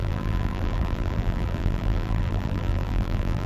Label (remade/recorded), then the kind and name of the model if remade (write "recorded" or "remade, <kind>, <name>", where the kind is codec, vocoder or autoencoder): remade, vocoder, BigVGAN v2